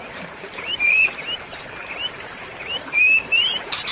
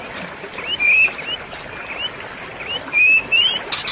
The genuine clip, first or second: second